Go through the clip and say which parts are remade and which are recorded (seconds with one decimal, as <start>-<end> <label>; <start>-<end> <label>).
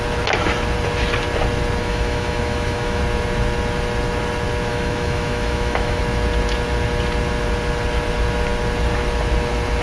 0.0-1.8 recorded; 1.8-3.0 remade; 3.0-4.7 recorded; 4.7-6.0 remade; 6.0-9.8 recorded